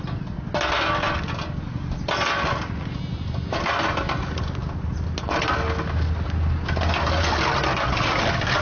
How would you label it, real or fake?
real